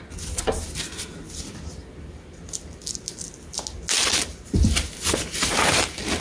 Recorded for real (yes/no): yes